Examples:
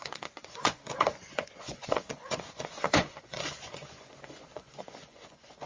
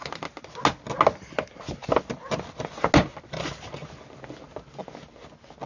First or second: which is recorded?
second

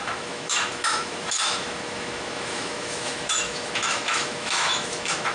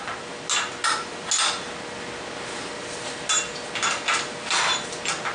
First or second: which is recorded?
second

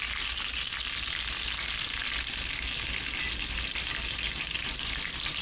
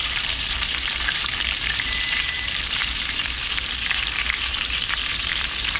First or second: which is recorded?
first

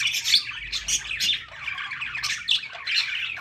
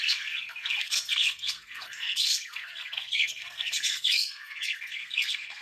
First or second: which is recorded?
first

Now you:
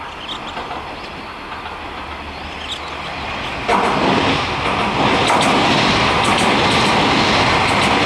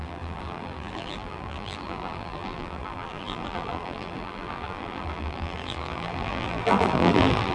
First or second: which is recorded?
first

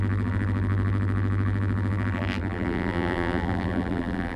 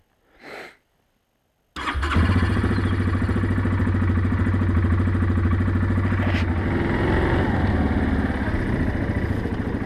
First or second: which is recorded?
second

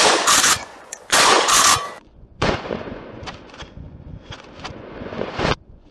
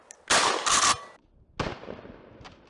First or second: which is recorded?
second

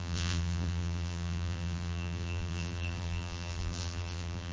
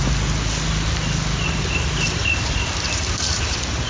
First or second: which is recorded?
second